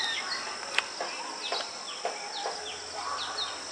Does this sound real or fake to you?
real